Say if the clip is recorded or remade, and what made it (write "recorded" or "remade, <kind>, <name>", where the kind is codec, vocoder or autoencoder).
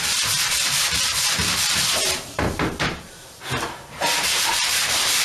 remade, vocoder, BigVGAN v2